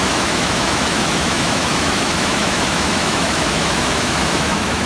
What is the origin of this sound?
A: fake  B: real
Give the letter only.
A